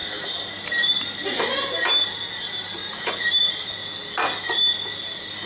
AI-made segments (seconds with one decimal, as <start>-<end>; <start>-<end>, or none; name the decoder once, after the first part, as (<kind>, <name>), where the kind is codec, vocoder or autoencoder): 0.0-1.3 (vocoder, BigVGAN v2); 2.8-3.7